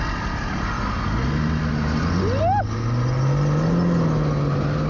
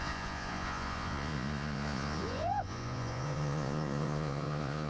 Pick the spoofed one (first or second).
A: second